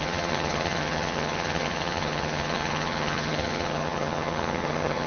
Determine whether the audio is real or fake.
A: fake